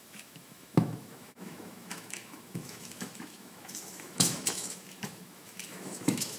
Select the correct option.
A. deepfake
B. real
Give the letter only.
A